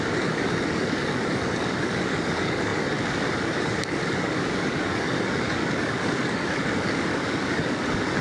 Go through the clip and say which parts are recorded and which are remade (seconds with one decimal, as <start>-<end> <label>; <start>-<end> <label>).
0.0-8.2 remade